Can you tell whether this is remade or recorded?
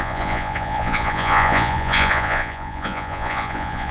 remade